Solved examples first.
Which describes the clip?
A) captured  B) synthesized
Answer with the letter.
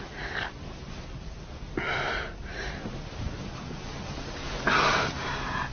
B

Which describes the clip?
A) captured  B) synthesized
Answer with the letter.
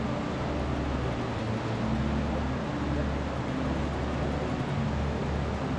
A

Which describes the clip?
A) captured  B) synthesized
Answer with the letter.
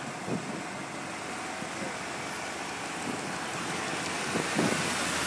A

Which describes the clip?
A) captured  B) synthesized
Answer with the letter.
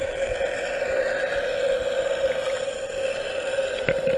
A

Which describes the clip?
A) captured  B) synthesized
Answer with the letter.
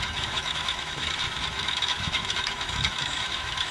B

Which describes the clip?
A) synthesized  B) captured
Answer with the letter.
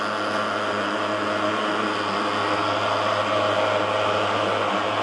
B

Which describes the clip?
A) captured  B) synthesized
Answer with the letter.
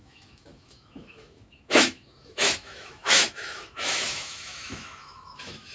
B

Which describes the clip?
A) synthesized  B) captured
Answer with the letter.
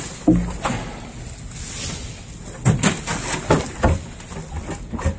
B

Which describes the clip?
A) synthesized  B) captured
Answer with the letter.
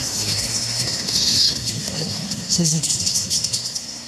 A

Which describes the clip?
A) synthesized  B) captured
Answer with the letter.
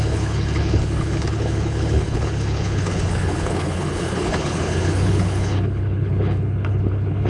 A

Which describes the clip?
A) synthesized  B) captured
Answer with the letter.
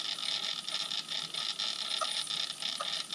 B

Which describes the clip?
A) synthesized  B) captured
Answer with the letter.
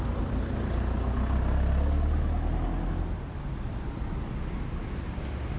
B